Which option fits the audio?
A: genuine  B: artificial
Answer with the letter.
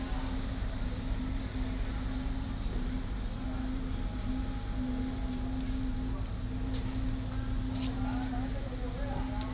A